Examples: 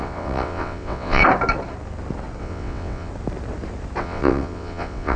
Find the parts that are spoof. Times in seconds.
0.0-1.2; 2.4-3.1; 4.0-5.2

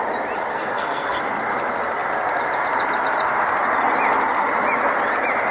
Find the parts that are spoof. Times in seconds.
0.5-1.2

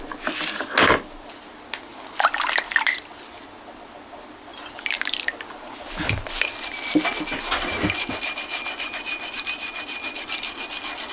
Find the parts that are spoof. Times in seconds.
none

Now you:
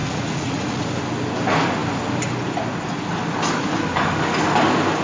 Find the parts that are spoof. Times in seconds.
0.0-0.8

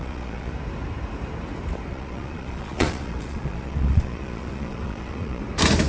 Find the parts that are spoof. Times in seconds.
0.0-0.5; 1.9-5.4

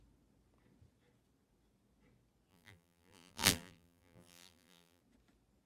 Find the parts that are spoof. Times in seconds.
2.5-5.0